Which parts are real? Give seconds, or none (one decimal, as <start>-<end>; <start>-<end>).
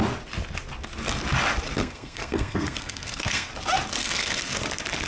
0.0-1.8; 3.5-4.0; 4.6-5.1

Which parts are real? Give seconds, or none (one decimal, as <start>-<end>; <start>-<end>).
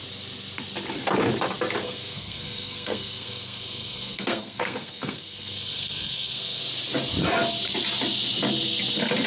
0.0-1.8; 6.6-9.3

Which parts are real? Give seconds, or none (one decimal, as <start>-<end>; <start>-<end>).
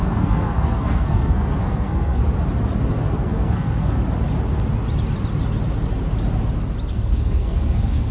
2.2-2.9; 4.0-6.9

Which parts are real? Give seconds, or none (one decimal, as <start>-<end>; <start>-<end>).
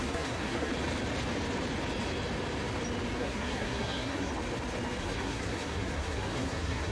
0.7-3.2; 4.3-5.0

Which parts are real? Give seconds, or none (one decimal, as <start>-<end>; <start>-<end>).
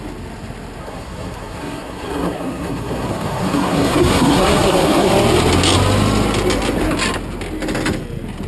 0.0-0.8; 5.1-8.5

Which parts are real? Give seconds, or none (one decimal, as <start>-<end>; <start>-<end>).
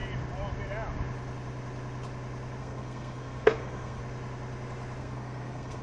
0.0-2.6; 4.0-5.0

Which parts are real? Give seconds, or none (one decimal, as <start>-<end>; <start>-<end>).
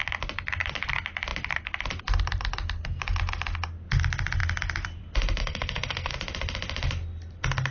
0.0-5.4; 6.1-7.7